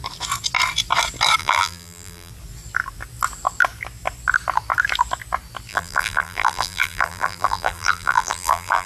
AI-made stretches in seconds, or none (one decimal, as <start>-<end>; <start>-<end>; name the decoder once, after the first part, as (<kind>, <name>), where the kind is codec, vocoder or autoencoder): 1.4-2.3 (vocoder, BigVGAN v2); 5.7-8.9